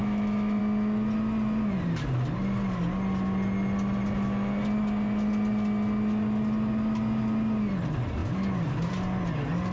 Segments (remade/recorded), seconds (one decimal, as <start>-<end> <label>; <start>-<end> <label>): 0.0-0.6 remade; 0.6-9.7 recorded